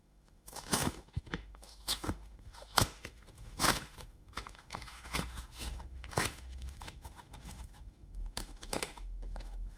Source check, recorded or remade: remade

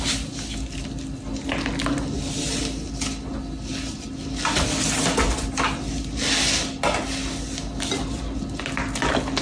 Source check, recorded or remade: recorded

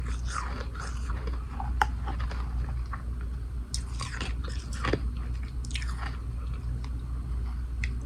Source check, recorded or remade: recorded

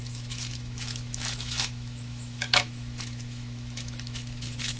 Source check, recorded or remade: remade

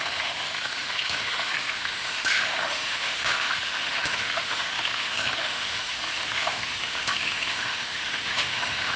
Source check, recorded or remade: remade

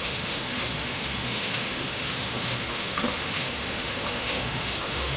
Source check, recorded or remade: remade